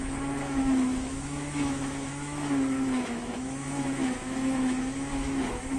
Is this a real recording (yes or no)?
no